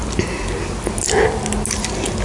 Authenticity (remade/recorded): recorded